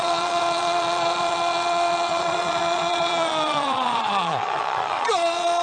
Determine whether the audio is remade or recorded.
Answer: remade